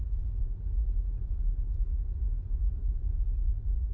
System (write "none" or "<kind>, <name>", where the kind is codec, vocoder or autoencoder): vocoder, Vocos